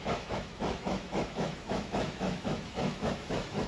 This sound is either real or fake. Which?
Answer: fake